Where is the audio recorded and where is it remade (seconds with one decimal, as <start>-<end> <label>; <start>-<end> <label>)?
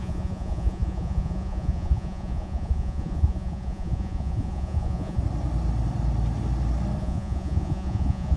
0.0-5.2 remade; 5.2-7.0 recorded; 7.0-8.4 remade